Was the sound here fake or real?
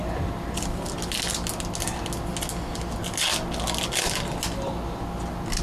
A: real